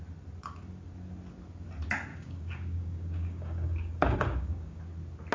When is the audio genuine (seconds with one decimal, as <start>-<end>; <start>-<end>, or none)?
0.0-2.1; 4.8-5.3